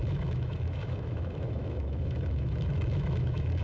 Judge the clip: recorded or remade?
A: remade